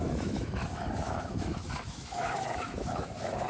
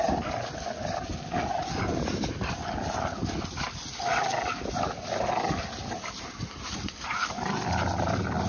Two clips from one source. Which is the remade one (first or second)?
first